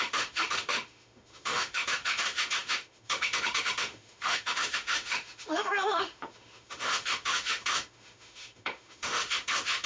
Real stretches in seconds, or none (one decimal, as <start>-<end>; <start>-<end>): none